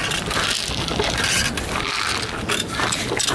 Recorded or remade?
recorded